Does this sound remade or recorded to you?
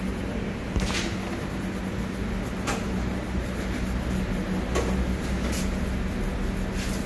recorded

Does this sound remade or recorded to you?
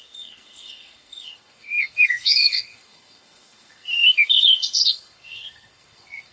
remade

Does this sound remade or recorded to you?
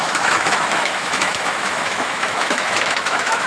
remade